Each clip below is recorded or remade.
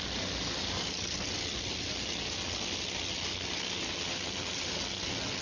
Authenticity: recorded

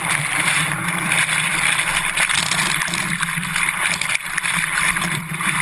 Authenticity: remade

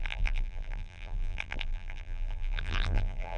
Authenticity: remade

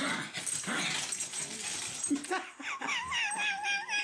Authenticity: recorded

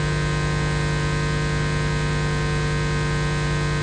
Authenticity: recorded